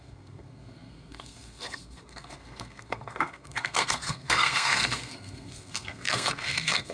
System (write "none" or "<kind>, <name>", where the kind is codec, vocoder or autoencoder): codec, SNAC